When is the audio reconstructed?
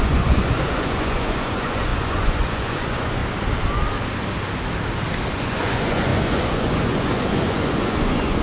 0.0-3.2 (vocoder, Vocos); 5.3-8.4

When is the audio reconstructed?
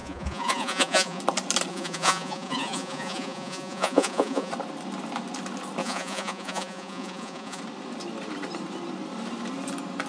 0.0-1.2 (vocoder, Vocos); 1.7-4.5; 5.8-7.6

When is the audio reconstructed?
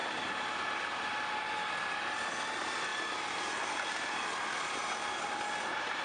none